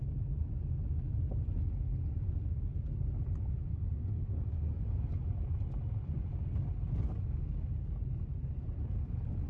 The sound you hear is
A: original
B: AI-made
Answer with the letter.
A